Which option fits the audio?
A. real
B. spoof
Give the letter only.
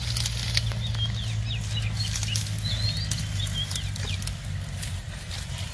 A